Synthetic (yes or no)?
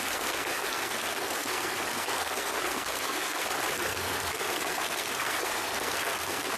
yes